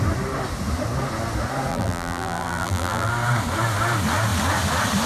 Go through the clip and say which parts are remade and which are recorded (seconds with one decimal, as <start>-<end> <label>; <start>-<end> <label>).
0.0-1.7 recorded; 1.7-3.1 remade; 3.1-5.1 recorded